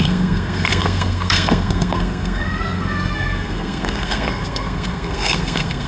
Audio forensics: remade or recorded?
remade